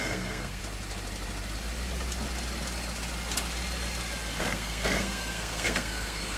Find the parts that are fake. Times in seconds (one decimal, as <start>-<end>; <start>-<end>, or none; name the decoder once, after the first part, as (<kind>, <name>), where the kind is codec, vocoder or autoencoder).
0.0-0.6 (codec, SNAC); 4.4-6.4